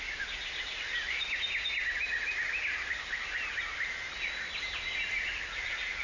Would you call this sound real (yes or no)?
yes